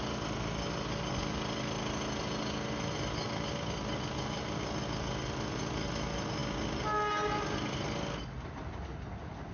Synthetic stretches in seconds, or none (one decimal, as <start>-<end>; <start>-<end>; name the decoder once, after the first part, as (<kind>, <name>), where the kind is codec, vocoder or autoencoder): none